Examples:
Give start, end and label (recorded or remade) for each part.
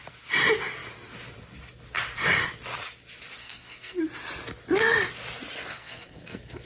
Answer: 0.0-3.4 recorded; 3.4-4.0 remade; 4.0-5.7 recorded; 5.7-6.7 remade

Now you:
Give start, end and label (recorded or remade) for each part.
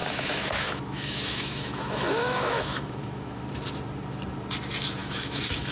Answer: 0.0-3.4 remade; 3.4-5.0 recorded; 5.0-5.7 remade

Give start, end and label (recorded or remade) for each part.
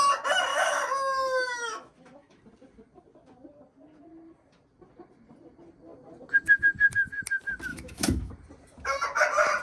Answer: 0.0-0.5 recorded; 0.5-2.4 remade; 2.4-7.7 recorded; 7.7-8.3 remade; 8.3-9.6 recorded